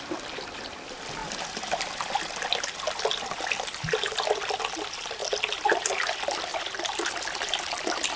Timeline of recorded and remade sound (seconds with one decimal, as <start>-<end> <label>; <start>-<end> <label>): 0.0-6.5 recorded; 6.5-7.1 remade; 7.1-8.2 recorded